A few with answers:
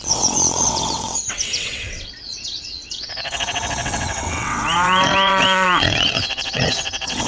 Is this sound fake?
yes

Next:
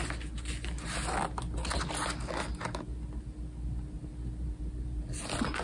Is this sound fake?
no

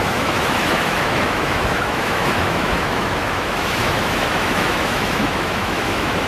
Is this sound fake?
yes